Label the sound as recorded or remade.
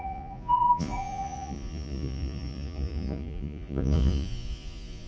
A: remade